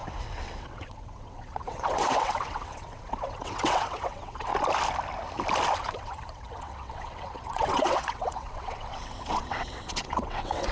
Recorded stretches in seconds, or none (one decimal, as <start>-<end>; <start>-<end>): 4.5-5.8